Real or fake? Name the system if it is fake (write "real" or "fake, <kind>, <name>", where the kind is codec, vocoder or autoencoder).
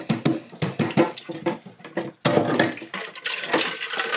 real